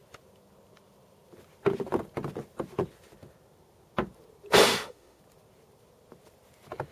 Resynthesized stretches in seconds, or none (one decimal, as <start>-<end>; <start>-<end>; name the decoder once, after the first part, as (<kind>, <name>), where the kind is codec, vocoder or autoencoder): 4.7-5.2 (autoencoder, DAC-VAE)